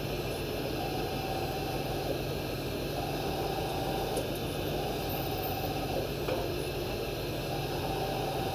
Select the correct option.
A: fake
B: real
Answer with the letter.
B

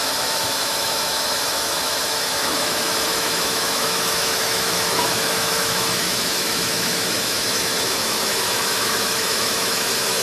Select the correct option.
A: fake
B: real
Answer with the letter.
A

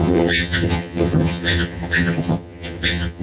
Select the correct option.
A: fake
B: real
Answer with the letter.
A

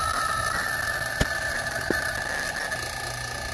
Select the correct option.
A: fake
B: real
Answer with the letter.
B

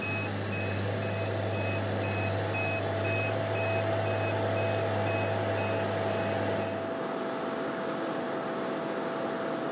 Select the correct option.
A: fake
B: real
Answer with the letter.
B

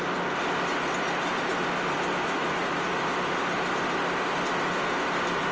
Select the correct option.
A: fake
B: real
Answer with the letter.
B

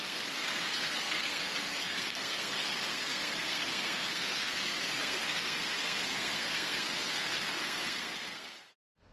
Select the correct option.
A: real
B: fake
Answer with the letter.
B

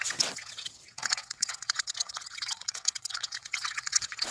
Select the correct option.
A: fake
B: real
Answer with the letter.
A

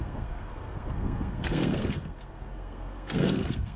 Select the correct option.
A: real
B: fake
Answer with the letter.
B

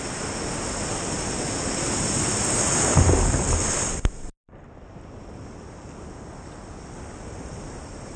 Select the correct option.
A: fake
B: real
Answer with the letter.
B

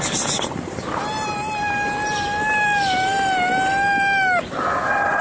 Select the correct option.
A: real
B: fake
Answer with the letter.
A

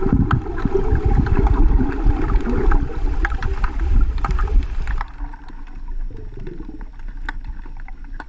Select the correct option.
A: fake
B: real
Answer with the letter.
B